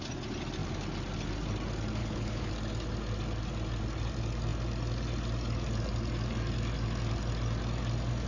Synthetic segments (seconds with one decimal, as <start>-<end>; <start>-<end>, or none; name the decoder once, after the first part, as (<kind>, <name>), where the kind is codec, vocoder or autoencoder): 2.0-2.5 (codec, HILCodec)